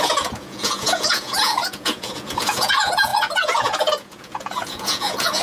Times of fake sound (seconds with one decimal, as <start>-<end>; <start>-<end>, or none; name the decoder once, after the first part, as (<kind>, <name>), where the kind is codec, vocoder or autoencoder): 0.0-5.4 (vocoder, Vocos)